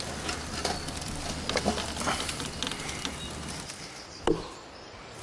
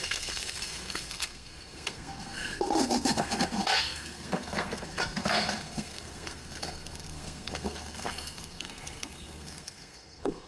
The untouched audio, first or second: first